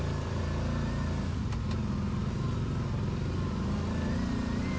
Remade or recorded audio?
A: recorded